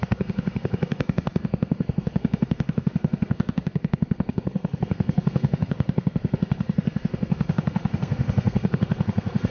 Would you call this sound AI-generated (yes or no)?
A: yes